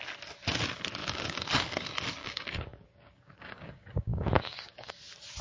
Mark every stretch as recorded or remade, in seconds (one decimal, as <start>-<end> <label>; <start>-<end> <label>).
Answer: 0.0-1.0 recorded; 1.0-1.5 remade; 1.5-2.2 recorded; 2.2-4.9 remade; 4.9-5.4 recorded

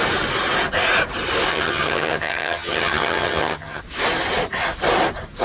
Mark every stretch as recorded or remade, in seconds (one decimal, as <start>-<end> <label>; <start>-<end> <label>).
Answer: 0.0-1.5 recorded; 1.5-3.8 remade; 3.8-5.4 recorded

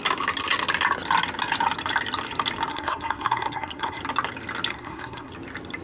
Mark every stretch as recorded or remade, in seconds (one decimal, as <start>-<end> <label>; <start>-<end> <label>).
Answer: 0.0-2.7 recorded; 2.7-4.0 remade; 4.0-4.7 recorded; 4.7-5.3 remade; 5.3-5.8 recorded